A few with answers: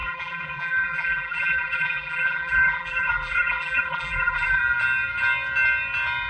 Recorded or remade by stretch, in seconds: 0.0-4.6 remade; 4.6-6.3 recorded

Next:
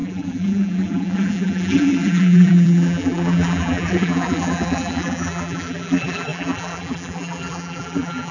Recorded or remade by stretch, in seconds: 0.0-8.3 remade